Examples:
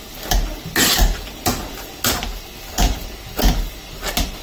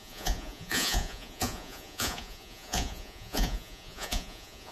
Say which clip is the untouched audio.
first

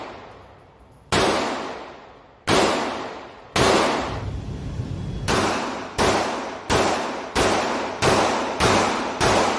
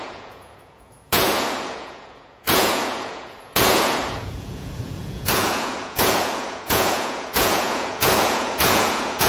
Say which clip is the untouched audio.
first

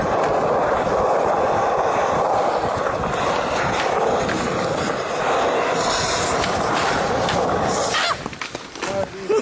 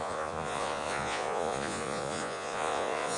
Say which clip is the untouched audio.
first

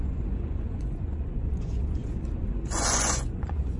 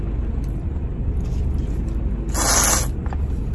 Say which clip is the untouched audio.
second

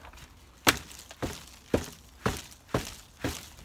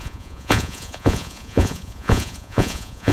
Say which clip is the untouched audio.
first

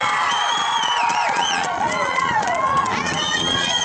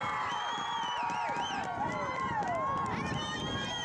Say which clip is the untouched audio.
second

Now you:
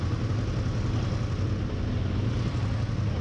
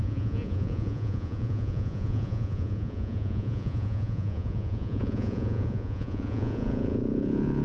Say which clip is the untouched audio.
first